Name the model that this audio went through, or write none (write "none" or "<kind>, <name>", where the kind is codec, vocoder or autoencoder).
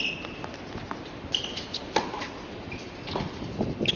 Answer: none